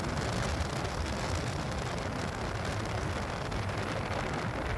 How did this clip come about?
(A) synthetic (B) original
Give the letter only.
B